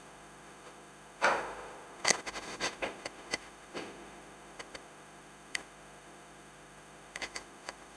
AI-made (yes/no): yes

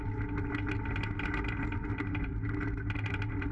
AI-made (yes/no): no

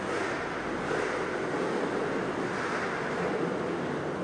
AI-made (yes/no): no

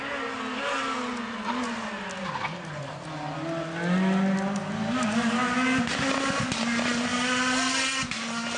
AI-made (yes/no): no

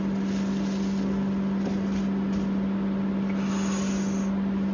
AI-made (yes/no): no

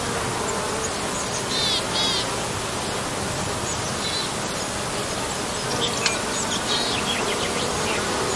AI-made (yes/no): no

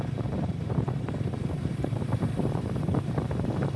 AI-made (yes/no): yes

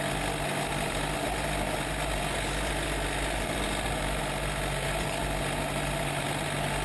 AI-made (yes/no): no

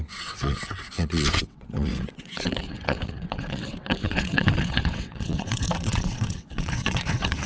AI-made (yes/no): yes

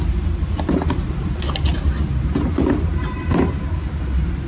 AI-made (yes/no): no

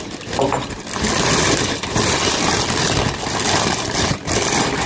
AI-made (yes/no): no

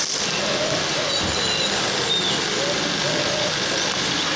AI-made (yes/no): no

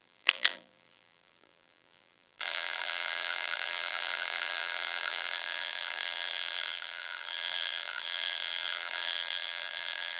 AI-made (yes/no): yes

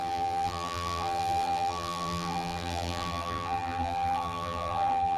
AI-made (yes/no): yes